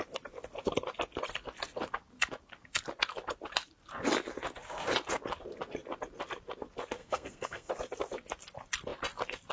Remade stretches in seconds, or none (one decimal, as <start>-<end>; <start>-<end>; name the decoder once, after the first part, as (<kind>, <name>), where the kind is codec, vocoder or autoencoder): 7.0-7.7 (codec, SNAC)